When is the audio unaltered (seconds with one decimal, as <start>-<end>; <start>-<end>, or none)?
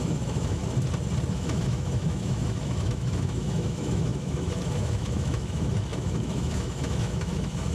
0.6-1.3